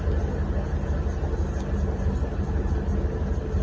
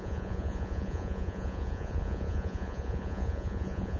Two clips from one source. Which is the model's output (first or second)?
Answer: second